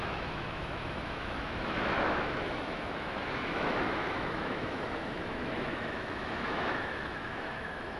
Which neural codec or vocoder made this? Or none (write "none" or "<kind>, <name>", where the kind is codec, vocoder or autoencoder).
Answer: autoencoder, DAC-VAE